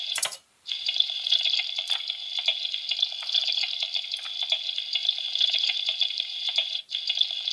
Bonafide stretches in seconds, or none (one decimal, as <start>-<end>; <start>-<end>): 1.5-5.0; 7.0-7.5